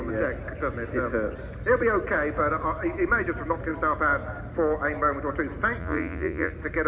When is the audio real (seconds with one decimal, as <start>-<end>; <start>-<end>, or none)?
0.0-5.8; 6.5-6.9